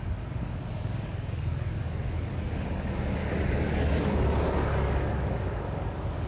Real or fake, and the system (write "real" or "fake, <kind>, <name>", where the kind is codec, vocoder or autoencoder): fake, codec, DAC